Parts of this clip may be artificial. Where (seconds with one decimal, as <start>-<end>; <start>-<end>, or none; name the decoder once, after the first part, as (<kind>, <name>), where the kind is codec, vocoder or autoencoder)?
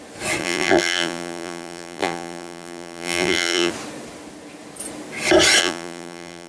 0.4-3.7 (vocoder, BigVGAN v2); 5.6-6.5